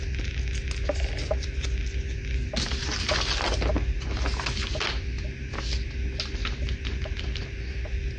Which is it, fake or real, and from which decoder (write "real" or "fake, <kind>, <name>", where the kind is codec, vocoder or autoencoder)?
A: real